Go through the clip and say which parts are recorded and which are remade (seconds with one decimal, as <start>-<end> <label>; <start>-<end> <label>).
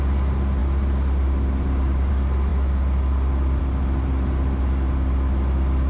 0.0-5.9 recorded